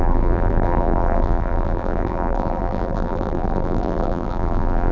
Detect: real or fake fake